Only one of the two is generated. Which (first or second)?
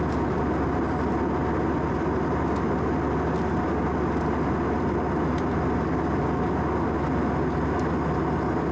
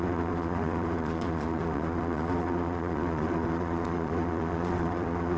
second